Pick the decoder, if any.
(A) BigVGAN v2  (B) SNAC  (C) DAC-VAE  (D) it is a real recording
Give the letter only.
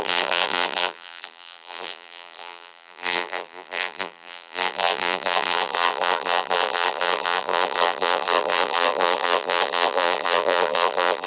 A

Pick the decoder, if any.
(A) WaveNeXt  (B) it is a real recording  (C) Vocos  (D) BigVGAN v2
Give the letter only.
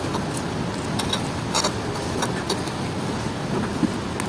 B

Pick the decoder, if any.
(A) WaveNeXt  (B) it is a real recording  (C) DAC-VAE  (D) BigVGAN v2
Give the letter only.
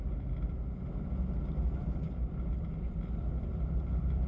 B